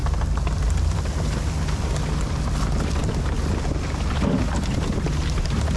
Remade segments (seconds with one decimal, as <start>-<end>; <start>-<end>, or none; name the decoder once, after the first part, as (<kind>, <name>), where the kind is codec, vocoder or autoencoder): 0.0-2.0 (vocoder, BigVGAN v2); 3.0-4.1